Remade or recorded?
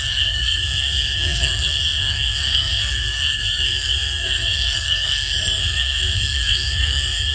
remade